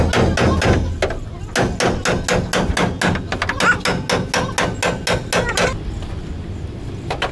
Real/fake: real